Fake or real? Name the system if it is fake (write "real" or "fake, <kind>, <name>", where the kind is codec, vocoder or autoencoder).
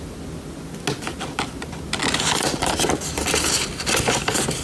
real